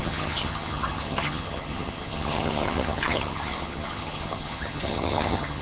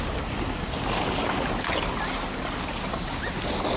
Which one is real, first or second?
second